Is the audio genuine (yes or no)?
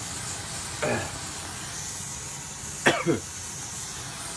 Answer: yes